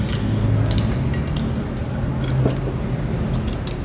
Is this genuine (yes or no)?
yes